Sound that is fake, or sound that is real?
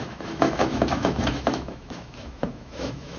fake